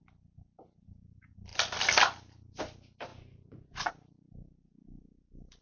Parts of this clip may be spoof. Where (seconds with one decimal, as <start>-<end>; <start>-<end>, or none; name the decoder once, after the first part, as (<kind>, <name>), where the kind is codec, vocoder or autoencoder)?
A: 3.1-3.9 (vocoder, Vocos)

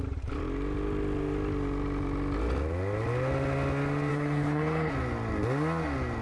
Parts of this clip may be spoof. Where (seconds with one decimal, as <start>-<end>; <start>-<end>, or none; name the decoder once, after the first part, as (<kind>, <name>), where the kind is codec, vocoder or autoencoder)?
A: 4.1-4.9 (codec, HILCodec)